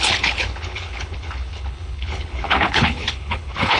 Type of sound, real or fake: fake